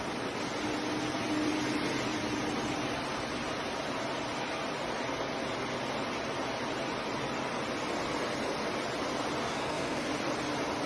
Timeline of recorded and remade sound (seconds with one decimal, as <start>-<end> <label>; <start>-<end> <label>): 0.0-9.4 recorded; 9.4-10.1 remade; 10.1-10.9 recorded